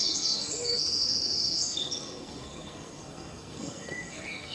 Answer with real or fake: fake